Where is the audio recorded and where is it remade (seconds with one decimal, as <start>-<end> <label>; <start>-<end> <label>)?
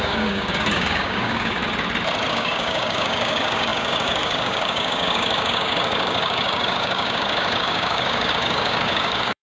0.0-1.6 remade; 1.6-2.3 recorded; 2.3-9.4 remade